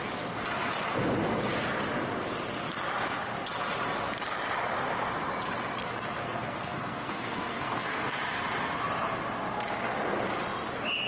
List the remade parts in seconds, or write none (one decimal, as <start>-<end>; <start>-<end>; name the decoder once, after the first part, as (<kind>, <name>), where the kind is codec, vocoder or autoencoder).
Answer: 6.2-8.1 (codec, SNAC)